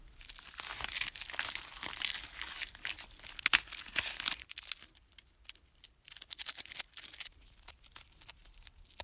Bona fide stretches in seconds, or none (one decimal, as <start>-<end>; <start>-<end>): 0.0-9.0